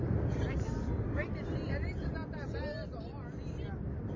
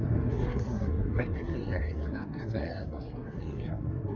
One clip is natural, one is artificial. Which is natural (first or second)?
first